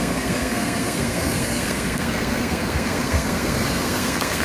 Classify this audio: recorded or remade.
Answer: remade